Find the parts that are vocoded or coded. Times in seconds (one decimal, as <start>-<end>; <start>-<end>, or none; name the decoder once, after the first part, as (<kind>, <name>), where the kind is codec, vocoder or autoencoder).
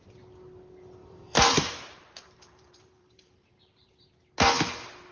1.0-4.1 (vocoder, BigVGAN v2)